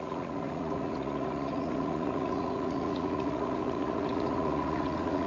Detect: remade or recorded remade